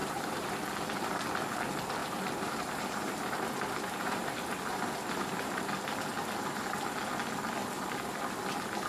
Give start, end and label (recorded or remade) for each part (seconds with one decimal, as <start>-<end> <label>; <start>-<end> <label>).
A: 0.0-0.5 remade; 0.5-2.0 recorded; 2.0-5.6 remade; 5.6-8.9 recorded